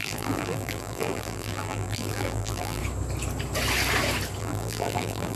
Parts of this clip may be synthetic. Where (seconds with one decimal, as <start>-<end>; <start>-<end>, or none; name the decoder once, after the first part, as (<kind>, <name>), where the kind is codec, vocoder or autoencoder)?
0.0-2.8 (vocoder, BigVGAN v2); 4.4-5.4

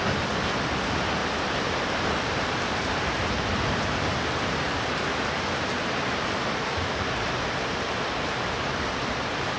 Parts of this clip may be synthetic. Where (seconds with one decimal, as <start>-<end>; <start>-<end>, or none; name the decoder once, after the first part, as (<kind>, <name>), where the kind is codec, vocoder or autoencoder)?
0.0-9.6 (vocoder, BigVGAN v2)

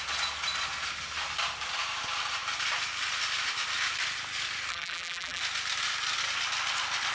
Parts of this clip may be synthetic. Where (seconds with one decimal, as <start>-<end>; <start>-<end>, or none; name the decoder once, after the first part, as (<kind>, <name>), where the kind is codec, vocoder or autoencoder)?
4.7-5.4 (vocoder, BigVGAN v2)

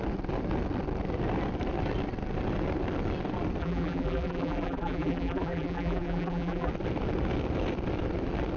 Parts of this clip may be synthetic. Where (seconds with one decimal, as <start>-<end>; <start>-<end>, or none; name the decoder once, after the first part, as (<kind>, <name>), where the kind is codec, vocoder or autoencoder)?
3.6-6.7 (vocoder, BigVGAN v2)

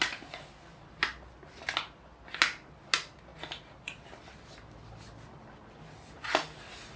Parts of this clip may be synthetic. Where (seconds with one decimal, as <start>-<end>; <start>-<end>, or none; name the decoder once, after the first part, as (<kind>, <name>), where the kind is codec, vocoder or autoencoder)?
none

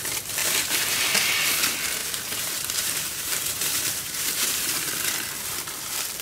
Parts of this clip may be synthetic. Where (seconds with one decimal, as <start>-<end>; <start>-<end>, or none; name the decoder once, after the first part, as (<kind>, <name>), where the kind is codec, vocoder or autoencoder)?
0.4-1.0 (vocoder, BigVGAN v2); 2.0-4.9

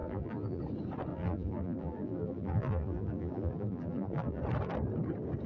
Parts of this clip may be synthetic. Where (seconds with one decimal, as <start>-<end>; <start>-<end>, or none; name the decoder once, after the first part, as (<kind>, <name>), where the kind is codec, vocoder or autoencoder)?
0.0-0.6 (vocoder, BigVGAN v2); 1.1-4.4